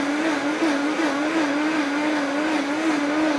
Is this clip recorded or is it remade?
recorded